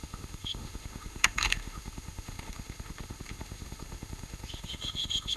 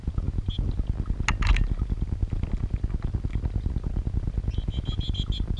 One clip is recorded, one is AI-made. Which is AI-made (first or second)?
first